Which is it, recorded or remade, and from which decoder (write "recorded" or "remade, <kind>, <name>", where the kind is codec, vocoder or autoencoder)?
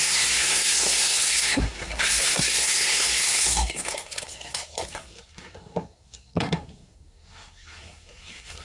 remade, codec, SNAC